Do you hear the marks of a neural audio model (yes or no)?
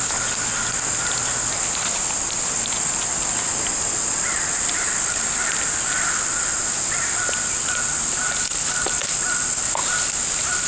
no